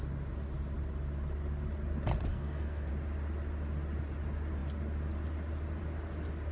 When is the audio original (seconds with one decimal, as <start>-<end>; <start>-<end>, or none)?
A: 0.0-2.3; 2.9-6.5